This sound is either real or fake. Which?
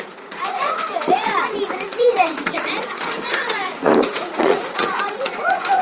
fake